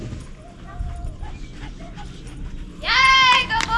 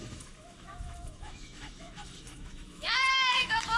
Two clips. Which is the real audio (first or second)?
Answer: first